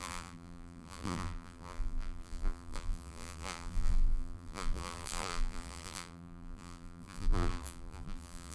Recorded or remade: remade